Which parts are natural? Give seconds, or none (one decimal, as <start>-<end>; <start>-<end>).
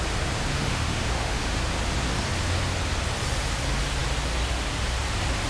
0.0-0.5; 1.6-5.5